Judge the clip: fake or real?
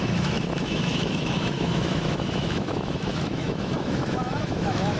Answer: fake